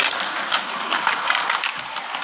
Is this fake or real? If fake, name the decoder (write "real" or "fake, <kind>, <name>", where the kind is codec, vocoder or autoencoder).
real